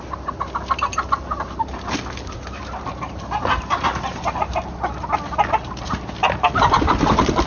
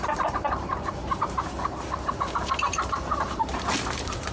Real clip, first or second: first